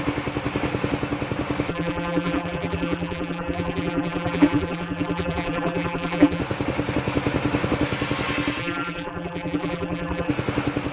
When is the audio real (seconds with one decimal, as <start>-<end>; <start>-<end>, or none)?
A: 0.0-1.7; 6.4-8.6; 10.3-10.9